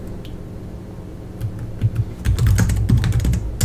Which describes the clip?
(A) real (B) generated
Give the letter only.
A